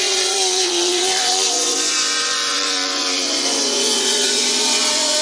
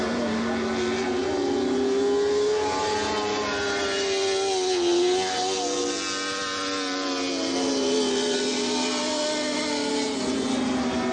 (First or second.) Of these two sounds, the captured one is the second